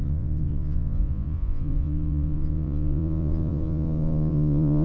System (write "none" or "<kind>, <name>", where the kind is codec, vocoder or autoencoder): vocoder, Vocos